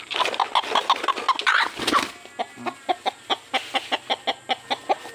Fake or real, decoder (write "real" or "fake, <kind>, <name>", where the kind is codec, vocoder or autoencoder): real